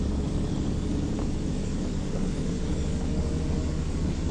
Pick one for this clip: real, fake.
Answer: fake